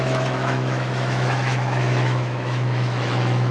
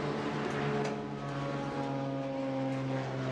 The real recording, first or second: second